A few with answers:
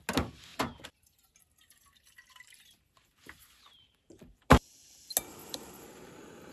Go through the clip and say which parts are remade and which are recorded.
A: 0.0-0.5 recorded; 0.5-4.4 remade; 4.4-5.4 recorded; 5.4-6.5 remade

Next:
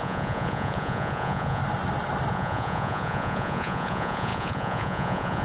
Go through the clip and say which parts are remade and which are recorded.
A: 0.0-1.6 remade; 1.6-2.3 recorded; 2.3-5.4 remade

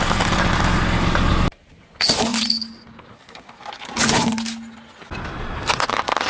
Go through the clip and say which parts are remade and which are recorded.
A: 0.0-6.3 recorded

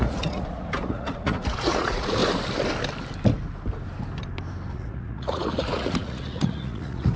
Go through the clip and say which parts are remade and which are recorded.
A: 0.0-2.2 remade; 2.2-4.7 recorded; 4.7-7.2 remade